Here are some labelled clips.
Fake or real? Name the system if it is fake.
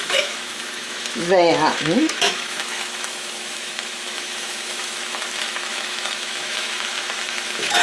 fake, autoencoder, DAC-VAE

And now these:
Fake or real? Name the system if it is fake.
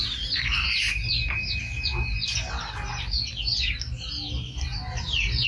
real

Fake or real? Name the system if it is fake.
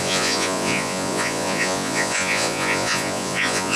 fake, vocoder, Vocos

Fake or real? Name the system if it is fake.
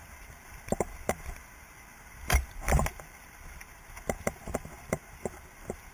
fake, vocoder, BigVGAN v2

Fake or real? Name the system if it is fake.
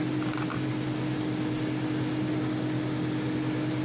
real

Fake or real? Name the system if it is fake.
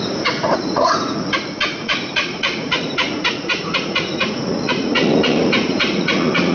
fake, vocoder, Vocos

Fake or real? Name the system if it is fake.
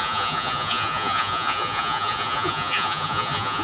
fake, vocoder, Vocos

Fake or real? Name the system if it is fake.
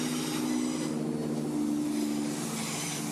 real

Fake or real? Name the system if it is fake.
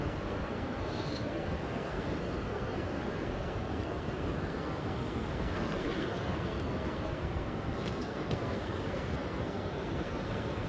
fake, codec, SNAC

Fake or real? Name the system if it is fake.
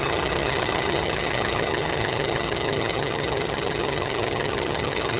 fake, vocoder, HiFi-GAN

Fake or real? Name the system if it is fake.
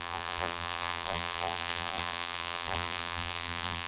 fake, vocoder, BigVGAN v2